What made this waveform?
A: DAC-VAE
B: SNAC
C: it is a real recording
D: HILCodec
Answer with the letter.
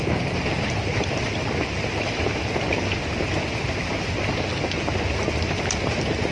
C